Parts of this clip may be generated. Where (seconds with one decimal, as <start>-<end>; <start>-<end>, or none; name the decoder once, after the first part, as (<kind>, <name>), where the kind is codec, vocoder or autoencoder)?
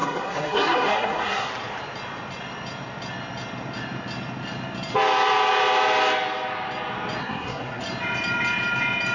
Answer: 0.0-1.5 (codec, SNAC); 7.2-7.8